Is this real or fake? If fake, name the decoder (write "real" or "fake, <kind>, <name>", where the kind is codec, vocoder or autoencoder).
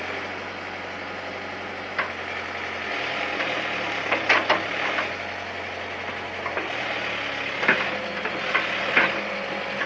real